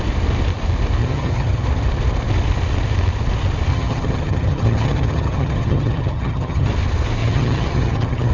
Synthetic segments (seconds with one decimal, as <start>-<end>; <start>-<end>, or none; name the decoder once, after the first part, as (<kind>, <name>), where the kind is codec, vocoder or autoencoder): 1.0-1.6 (vocoder, HiFi-GAN); 3.7-6.7; 7.2-8.3